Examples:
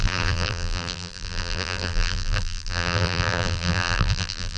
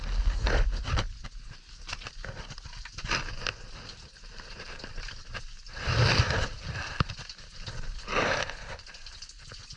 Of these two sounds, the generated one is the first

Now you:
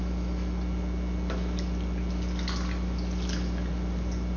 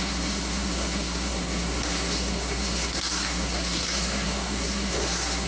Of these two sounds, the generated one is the second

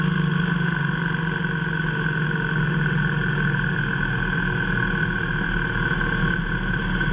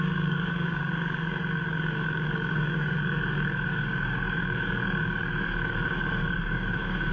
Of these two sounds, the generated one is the second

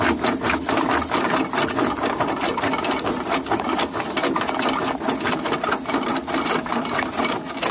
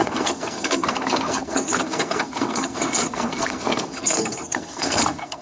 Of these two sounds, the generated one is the second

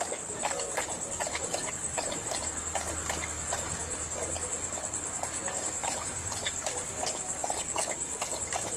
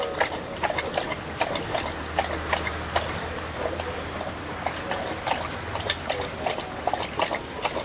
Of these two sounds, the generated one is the first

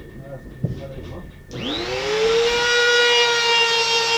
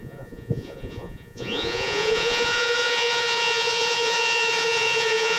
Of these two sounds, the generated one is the second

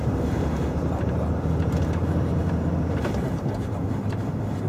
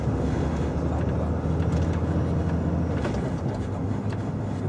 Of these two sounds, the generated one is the first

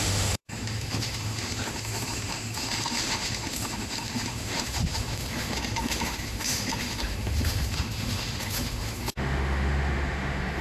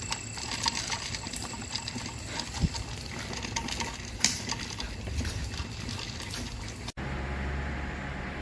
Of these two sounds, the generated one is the first